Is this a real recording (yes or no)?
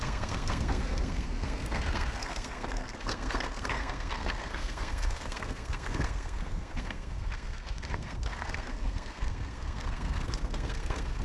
no